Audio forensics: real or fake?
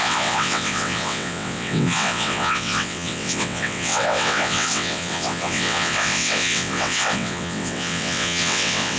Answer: fake